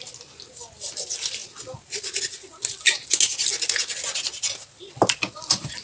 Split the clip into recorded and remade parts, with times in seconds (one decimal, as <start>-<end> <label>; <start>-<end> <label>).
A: 0.0-5.8 recorded